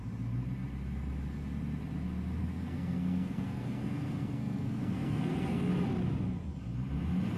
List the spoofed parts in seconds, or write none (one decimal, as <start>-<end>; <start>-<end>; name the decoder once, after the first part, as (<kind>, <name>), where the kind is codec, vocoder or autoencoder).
2.4-5.7 (codec, SNAC)